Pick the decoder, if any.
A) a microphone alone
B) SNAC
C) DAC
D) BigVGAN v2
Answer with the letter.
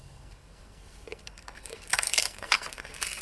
B